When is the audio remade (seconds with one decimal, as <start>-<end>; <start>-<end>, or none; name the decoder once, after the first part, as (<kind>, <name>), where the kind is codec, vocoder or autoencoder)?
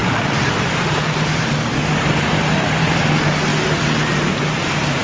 0.0-3.0 (vocoder, BigVGAN v2)